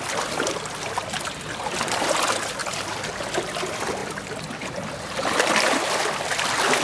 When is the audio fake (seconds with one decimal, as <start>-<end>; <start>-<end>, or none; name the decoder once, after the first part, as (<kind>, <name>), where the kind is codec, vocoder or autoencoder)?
none